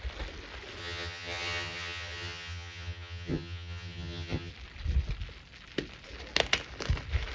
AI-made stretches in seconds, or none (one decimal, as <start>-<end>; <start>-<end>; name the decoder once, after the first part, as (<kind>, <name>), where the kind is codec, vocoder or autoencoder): 0.8-4.5 (vocoder, HiFi-GAN)

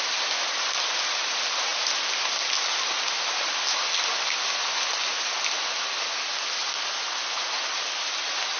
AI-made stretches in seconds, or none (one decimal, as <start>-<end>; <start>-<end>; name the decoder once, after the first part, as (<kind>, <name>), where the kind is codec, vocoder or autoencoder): none

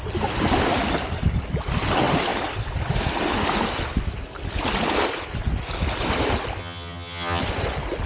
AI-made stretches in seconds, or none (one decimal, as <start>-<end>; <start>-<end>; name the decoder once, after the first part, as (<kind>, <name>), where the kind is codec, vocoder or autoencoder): 6.6-7.4 (vocoder, HiFi-GAN)

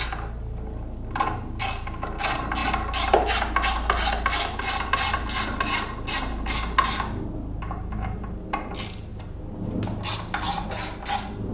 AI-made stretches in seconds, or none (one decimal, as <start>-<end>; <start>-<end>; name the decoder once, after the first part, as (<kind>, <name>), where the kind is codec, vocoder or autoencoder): none